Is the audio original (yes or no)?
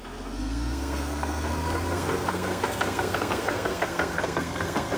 no